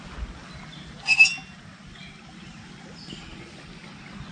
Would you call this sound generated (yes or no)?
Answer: no